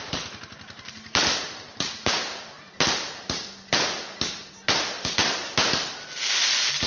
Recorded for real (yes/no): yes